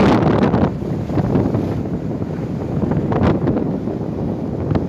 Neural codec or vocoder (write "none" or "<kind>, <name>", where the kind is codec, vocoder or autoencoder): none